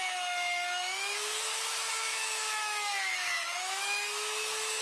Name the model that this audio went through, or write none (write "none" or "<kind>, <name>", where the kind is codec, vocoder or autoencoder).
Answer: autoencoder, DAC-VAE